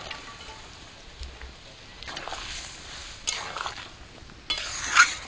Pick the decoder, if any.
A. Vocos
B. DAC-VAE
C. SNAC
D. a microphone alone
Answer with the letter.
D